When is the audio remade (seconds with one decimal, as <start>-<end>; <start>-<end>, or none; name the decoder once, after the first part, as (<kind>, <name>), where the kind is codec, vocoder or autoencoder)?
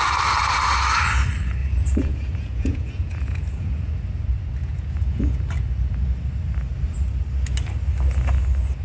1.6-3.9 (vocoder, Vocos); 4.6-5.4